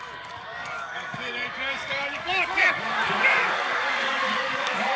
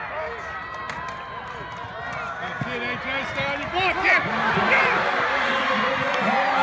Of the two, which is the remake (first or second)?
first